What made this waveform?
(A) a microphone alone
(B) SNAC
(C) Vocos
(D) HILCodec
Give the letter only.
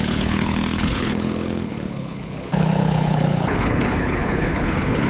D